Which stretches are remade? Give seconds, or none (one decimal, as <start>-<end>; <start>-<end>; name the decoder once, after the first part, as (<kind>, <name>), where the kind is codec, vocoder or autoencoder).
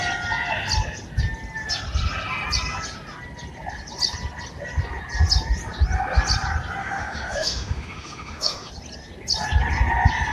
6.8-8.7 (autoencoder, DAC-VAE)